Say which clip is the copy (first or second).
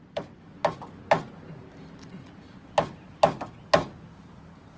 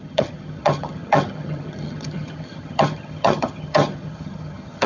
second